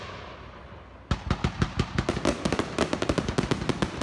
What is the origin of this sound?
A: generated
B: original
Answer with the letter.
B